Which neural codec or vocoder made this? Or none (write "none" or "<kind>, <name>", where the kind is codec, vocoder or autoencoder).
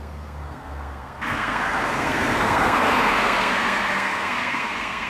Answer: codec, SNAC